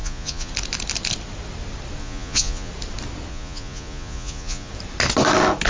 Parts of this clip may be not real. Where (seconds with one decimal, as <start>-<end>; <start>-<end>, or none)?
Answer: 0.0-0.5; 2.0-2.7; 3.3-4.7